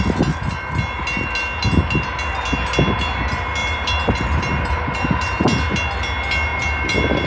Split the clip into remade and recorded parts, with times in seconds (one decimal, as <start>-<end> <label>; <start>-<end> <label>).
0.0-3.6 recorded; 3.6-4.8 remade; 4.8-6.5 recorded; 6.5-7.3 remade